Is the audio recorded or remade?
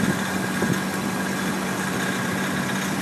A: recorded